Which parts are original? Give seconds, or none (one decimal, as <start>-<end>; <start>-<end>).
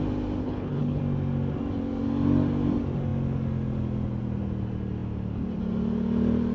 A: 0.0-0.4; 1.0-6.5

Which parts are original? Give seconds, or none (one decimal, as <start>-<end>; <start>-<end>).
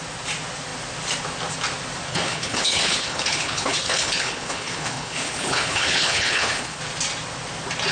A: 0.0-2.1; 6.8-7.9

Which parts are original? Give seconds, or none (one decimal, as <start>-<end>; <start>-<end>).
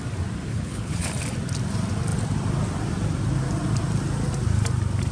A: 0.0-0.5; 1.1-5.1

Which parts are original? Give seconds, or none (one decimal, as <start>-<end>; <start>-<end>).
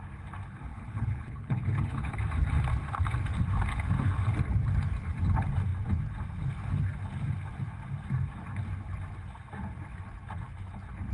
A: 0.0-0.7; 2.1-11.1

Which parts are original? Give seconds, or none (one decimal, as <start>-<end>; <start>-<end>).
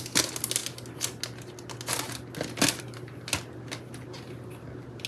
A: 0.0-5.1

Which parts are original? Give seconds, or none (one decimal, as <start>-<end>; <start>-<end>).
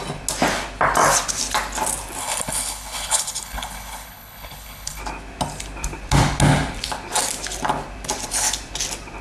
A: 0.0-2.2; 5.0-9.2